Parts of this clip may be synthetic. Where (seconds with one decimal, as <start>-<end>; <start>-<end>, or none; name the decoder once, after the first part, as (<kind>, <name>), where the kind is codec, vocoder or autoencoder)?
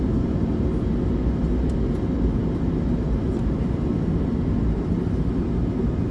none